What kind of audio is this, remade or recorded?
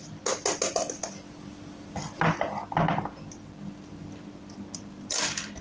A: recorded